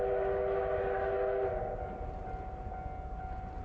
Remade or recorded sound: recorded